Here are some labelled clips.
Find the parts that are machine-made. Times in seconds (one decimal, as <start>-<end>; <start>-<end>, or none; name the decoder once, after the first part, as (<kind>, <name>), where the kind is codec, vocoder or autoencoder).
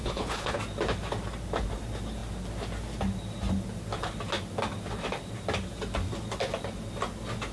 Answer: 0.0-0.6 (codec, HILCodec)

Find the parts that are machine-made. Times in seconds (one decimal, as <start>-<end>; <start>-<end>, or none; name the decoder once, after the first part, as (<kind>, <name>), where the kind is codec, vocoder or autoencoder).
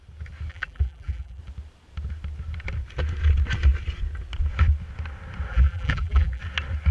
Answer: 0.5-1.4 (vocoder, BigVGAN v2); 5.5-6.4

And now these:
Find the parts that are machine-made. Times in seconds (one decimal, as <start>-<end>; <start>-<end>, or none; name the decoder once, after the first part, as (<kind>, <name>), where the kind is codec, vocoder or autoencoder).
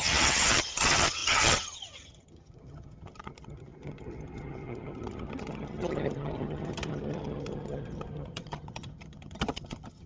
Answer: 0.0-10.1 (vocoder, HiFi-GAN)